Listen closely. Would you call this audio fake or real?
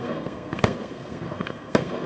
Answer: fake